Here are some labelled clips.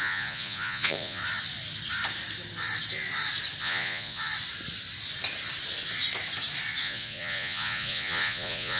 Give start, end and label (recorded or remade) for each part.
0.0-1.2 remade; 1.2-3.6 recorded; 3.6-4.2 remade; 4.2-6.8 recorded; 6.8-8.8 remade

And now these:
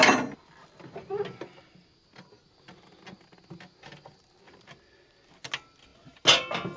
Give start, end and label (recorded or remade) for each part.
0.0-6.8 recorded

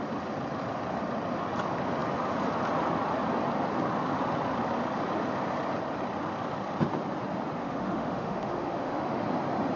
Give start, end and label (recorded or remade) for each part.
0.0-7.6 recorded; 7.6-9.2 remade; 9.2-9.8 recorded

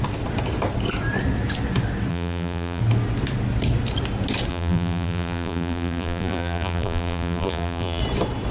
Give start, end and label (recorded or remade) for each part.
0.0-2.1 recorded; 2.1-2.8 remade; 2.8-4.5 recorded; 4.5-8.0 remade; 8.0-8.5 recorded

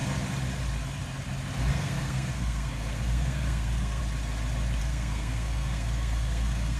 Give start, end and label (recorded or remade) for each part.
0.0-1.7 recorded; 1.7-4.0 remade; 4.0-4.8 recorded; 4.8-6.8 remade

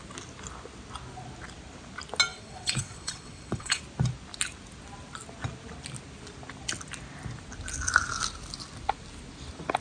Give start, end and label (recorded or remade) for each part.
0.0-2.3 recorded; 2.3-3.8 remade; 3.8-9.8 recorded